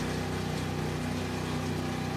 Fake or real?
real